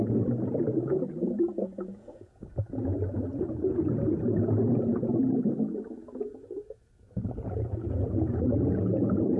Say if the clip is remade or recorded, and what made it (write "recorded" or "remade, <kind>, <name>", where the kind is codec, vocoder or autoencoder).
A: remade, vocoder, Vocos